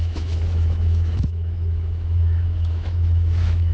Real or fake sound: fake